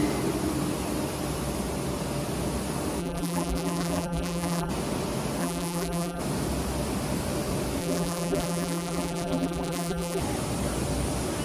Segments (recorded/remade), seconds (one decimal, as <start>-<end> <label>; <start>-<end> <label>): 0.0-3.0 recorded; 3.0-4.7 remade; 4.7-5.4 recorded; 5.4-6.2 remade; 6.2-7.8 recorded; 7.8-10.2 remade; 10.2-11.4 recorded